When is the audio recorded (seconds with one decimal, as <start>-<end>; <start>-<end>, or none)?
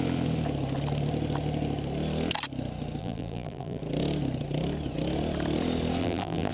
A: 0.0-3.0; 3.8-6.0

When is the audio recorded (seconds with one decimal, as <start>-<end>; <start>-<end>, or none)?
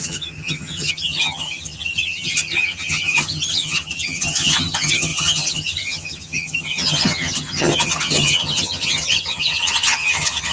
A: none